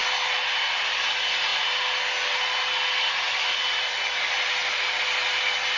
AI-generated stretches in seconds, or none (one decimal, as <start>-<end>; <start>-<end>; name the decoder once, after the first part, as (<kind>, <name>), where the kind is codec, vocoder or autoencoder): none